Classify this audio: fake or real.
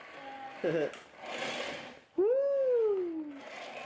real